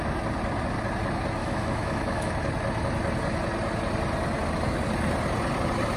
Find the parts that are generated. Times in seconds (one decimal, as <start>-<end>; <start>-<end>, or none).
1.4-2.3